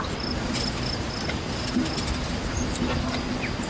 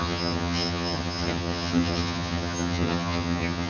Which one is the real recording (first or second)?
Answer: first